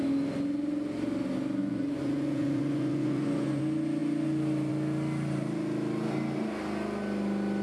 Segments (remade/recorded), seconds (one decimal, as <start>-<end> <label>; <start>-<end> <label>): 0.0-1.6 recorded; 1.6-3.6 remade; 3.6-7.6 recorded

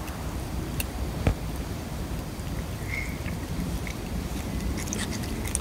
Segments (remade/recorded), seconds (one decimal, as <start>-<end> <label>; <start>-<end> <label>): 0.0-5.6 recorded

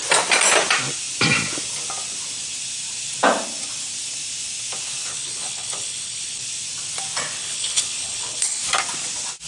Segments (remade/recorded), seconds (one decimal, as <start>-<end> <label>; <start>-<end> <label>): 0.0-5.1 recorded; 5.1-6.4 remade; 6.4-7.4 recorded; 7.4-8.6 remade; 8.6-9.5 recorded

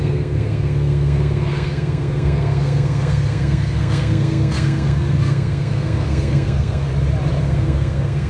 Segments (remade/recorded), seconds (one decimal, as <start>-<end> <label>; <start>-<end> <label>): 0.0-6.9 remade; 6.9-7.4 recorded; 7.4-8.3 remade

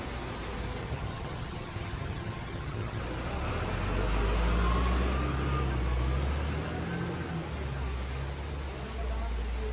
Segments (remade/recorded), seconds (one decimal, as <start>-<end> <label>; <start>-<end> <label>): 0.0-0.8 recorded; 0.8-3.0 remade; 3.0-9.7 recorded

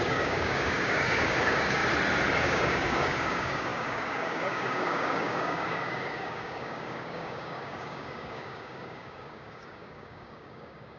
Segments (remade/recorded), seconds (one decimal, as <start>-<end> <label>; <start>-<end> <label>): 0.0-1.8 remade; 1.8-2.4 recorded; 2.4-11.0 remade